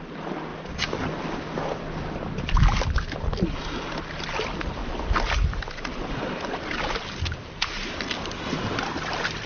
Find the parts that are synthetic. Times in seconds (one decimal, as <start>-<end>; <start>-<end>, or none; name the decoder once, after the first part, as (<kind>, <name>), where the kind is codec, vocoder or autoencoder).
none